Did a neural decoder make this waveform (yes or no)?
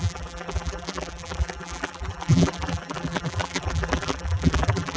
yes